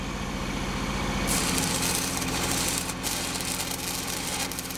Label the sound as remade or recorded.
remade